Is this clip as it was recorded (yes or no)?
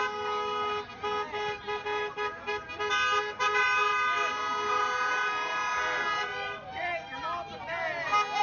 yes